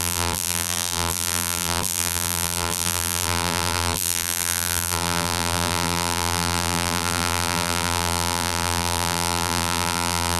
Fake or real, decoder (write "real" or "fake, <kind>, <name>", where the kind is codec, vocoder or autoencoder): fake, vocoder, BigVGAN v2